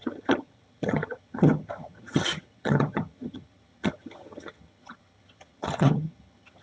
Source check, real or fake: fake